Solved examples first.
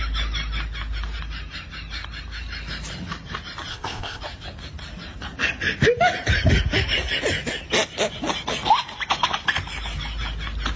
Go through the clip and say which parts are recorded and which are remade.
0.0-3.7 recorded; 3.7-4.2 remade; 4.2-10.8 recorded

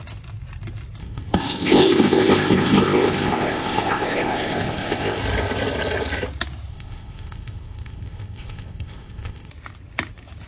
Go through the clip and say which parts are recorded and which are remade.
0.0-1.0 recorded; 1.0-5.2 remade; 5.2-6.7 recorded; 6.7-9.5 remade; 9.5-10.5 recorded

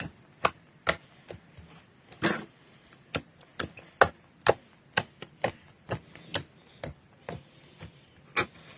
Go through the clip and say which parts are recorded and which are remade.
0.0-8.8 recorded

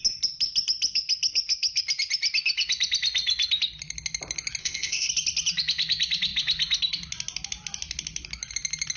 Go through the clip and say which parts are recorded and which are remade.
0.0-4.6 recorded; 4.6-5.1 remade; 5.1-9.0 recorded

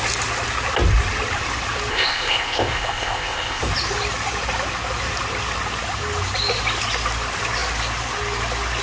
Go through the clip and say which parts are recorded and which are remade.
0.0-1.9 recorded; 1.9-3.6 remade; 3.6-8.8 recorded

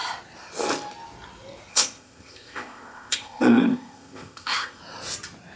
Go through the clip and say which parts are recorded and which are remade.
0.0-1.7 recorded; 1.7-4.8 remade; 4.8-5.6 recorded

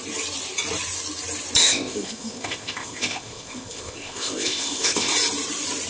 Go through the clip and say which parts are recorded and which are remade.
0.0-1.6 recorded; 1.6-5.1 remade; 5.1-5.9 recorded

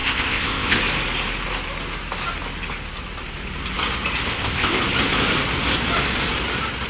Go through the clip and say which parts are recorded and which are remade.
0.0-0.8 remade; 0.8-4.3 recorded; 4.3-4.8 remade; 4.8-6.9 recorded